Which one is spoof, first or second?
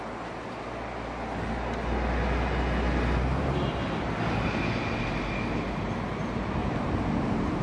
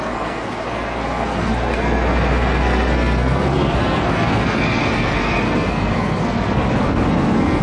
second